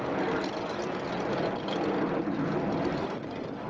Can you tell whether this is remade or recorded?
recorded